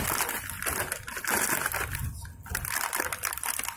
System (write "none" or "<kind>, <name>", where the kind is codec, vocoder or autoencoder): none